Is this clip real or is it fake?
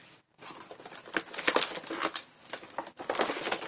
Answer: real